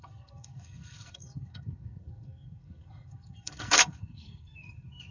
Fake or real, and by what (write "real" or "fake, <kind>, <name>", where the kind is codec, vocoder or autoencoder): fake, codec, SNAC